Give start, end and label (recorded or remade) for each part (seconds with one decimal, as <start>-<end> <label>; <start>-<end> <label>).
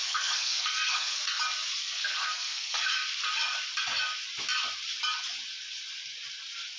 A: 0.0-1.2 remade; 1.2-1.8 recorded; 1.8-2.8 remade; 2.8-6.8 recorded